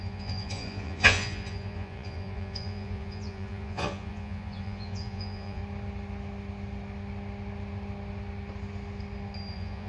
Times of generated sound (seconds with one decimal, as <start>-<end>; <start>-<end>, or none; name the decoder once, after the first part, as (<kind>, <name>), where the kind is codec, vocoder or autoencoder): 0.0-5.6 (vocoder, Vocos); 9.5-9.9